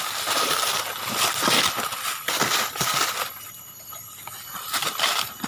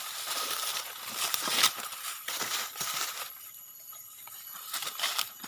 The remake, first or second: second